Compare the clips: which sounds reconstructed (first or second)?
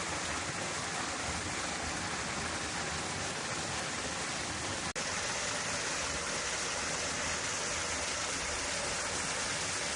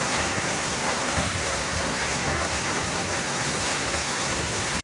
second